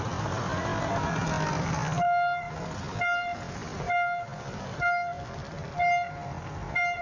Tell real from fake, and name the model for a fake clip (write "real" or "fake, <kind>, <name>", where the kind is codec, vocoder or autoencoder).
real